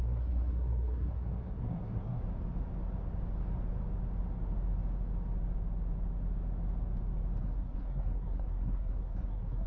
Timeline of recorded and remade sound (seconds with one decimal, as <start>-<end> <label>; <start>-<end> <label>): 0.0-2.2 remade; 2.2-7.4 recorded; 7.4-9.7 remade